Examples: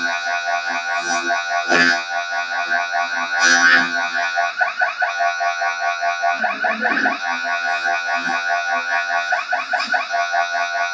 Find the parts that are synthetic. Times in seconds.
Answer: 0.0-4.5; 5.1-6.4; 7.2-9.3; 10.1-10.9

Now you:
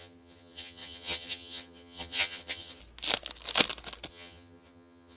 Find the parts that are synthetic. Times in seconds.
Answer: 0.0-2.8; 4.1-5.2

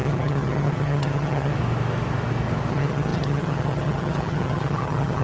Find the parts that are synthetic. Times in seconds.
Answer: 0.0-1.5; 2.7-5.2

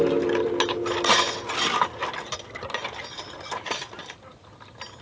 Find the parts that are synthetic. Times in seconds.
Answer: none